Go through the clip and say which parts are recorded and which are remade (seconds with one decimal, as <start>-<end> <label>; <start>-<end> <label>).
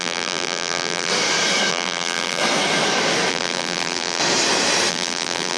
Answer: 0.0-1.1 remade; 1.1-1.7 recorded; 1.7-2.4 remade; 2.4-3.3 recorded; 3.3-4.2 remade; 4.2-4.9 recorded; 4.9-5.6 remade